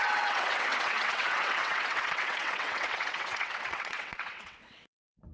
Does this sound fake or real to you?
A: fake